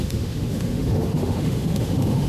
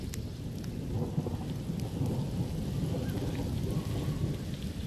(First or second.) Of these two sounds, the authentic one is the second